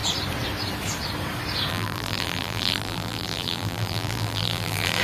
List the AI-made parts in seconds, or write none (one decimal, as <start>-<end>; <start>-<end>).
1.7-5.0